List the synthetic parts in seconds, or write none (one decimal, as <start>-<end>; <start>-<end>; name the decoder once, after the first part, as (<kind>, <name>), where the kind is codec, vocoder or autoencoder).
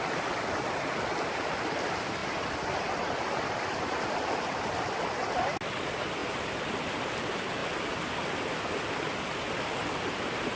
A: 7.6-8.4 (vocoder, BigVGAN v2)